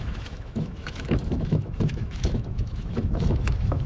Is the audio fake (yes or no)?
yes